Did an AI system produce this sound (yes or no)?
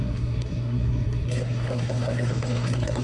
yes